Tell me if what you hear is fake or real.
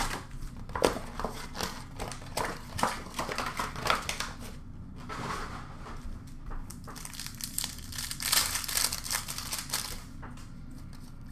real